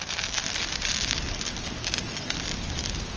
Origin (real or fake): real